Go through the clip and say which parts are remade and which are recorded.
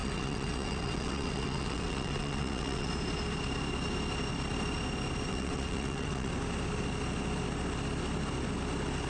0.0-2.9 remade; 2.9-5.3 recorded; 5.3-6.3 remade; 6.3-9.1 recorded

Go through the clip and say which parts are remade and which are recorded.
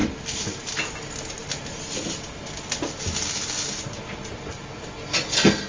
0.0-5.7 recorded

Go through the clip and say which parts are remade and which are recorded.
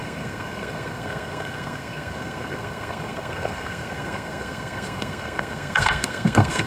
0.0-6.7 remade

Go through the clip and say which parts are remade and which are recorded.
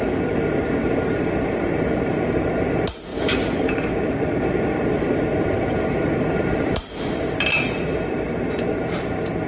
0.0-0.8 recorded; 0.8-2.5 remade; 2.5-3.1 recorded; 3.1-7.7 remade; 7.7-9.5 recorded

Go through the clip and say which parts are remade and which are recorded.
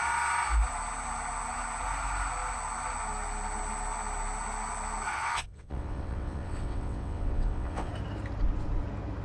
0.0-5.1 recorded; 5.1-7.9 remade; 7.9-9.2 recorded